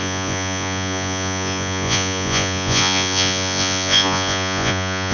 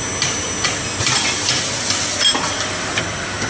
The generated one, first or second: first